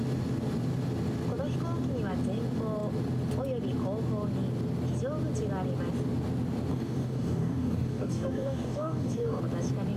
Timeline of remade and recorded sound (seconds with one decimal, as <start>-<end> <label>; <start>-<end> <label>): 0.0-6.7 recorded; 6.7-9.4 remade; 9.4-10.0 recorded